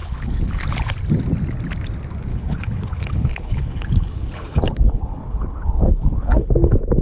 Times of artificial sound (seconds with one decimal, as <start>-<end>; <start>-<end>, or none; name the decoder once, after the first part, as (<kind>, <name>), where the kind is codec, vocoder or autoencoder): 0.0-0.6 (codec, HILCodec); 2.3-6.5